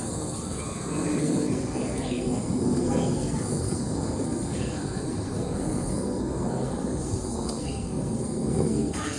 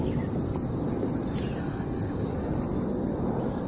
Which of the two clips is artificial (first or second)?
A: first